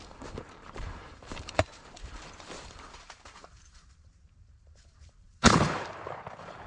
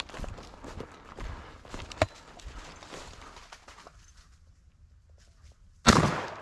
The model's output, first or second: first